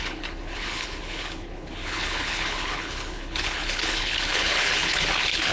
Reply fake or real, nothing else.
fake